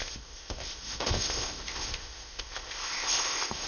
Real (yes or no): no